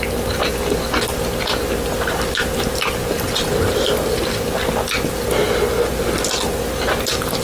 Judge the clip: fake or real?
real